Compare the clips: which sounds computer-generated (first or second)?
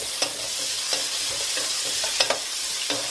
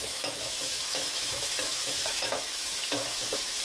second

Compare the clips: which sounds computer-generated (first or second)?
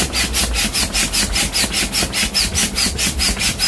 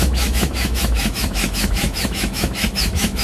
second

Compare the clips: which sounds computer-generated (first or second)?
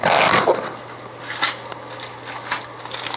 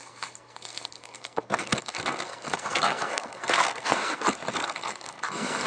second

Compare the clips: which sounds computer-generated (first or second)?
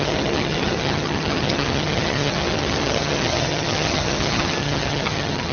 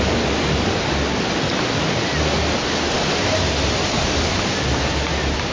first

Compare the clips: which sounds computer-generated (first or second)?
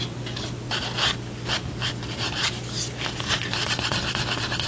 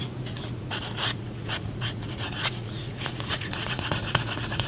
second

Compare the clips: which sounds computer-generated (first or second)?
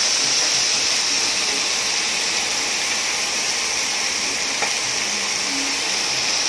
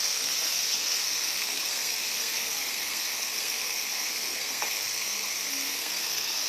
second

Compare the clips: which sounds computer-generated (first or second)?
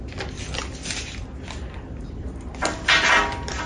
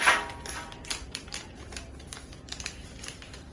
second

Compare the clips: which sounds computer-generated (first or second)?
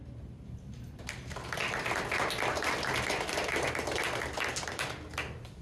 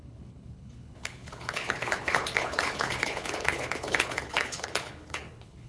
second